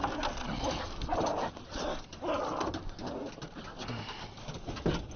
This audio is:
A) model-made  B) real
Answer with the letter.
B